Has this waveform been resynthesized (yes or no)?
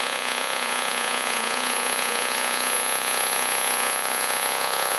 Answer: yes